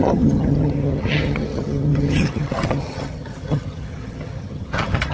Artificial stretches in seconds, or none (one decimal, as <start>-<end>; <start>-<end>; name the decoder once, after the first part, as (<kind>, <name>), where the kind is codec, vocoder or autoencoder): 0.0-5.1 (vocoder, HiFi-GAN)